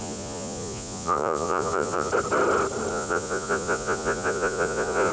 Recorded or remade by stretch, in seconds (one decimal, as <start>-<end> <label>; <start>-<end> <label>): 0.0-2.1 remade; 2.1-2.9 recorded; 2.9-5.1 remade

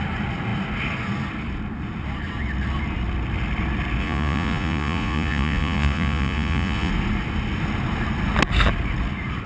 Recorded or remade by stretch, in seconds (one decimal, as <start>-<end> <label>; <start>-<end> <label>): 0.0-4.0 recorded; 4.0-6.9 remade; 6.9-9.5 recorded

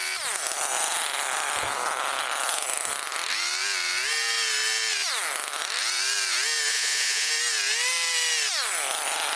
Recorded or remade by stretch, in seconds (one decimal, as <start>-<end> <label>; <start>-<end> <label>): 0.0-6.7 recorded; 6.7-7.3 remade; 7.3-9.4 recorded

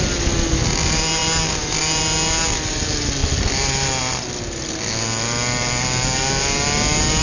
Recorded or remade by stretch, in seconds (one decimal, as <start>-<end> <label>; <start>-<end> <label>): 0.0-7.2 recorded

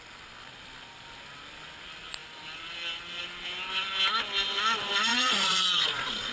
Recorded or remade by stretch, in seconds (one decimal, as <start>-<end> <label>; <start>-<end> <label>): 0.0-5.1 recorded; 5.1-6.3 remade